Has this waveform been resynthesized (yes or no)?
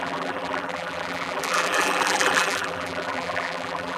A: yes